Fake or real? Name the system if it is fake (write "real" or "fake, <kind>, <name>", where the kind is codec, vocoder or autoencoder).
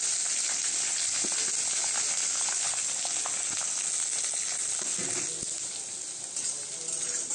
real